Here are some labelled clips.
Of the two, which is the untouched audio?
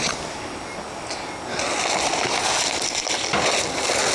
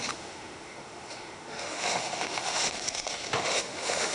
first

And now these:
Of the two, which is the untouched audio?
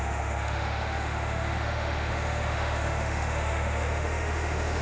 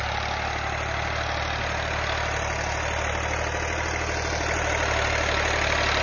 second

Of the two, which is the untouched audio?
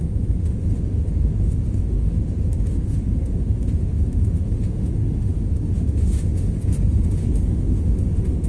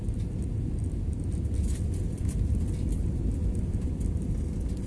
second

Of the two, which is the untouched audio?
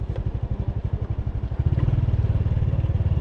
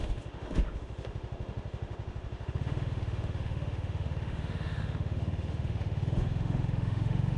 first